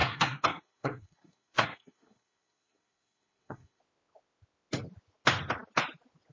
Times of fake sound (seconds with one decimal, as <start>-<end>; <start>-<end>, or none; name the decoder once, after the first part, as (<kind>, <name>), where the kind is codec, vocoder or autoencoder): 0.0-3.8 (codec, SNAC)

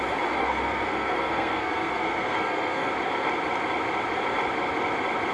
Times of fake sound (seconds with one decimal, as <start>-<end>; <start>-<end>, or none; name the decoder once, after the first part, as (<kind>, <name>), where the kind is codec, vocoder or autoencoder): 0.4-2.9 (codec, SNAC)

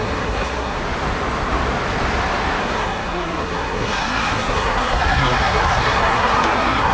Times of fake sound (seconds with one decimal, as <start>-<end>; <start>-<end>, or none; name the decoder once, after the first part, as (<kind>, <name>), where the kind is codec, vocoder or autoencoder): 0.0-0.8 (codec, SNAC); 2.6-6.9

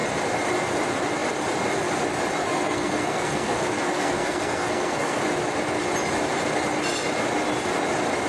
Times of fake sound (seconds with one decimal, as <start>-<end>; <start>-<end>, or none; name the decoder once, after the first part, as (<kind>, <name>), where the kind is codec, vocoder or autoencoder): 2.4-5.2 (codec, SNAC)

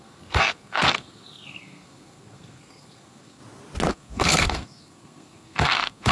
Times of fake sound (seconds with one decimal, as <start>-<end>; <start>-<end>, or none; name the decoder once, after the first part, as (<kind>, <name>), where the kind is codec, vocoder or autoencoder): 0.0-3.4 (codec, SNAC); 3.9-6.1